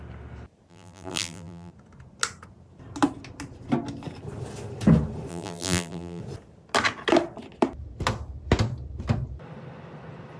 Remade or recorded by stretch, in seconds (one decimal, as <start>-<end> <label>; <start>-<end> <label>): 0.0-0.7 recorded; 0.7-1.7 remade; 1.7-5.3 recorded; 5.3-6.2 remade; 6.2-10.4 recorded